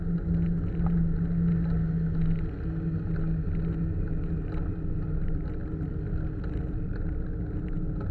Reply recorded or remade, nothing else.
recorded